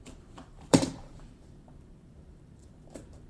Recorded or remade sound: remade